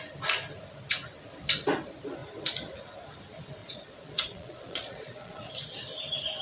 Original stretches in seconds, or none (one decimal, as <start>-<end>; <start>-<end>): 0.0-3.6; 5.5-6.4